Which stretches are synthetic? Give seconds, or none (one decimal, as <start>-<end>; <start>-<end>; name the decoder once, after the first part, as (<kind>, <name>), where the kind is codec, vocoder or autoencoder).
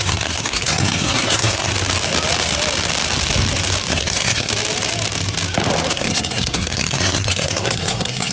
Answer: 0.0-1.7 (codec, SNAC); 3.9-4.5; 5.9-8.3